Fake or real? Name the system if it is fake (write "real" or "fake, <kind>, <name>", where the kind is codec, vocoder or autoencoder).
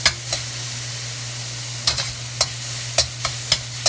real